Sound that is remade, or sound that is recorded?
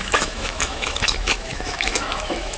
remade